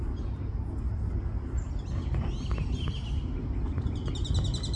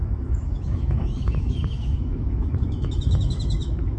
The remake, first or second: second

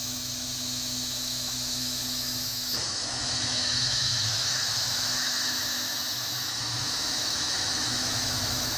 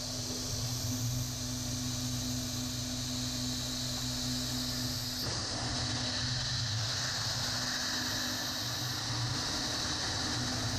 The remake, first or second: first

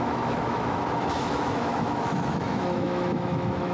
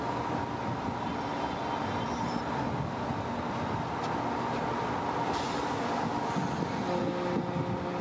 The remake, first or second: first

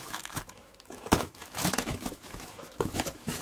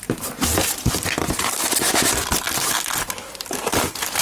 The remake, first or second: first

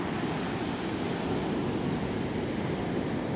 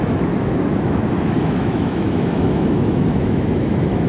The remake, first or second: second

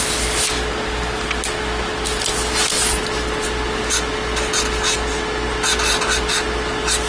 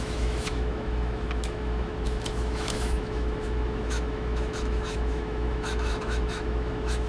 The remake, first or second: second